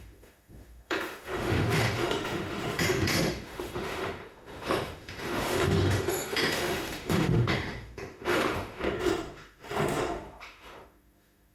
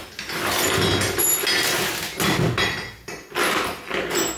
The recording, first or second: second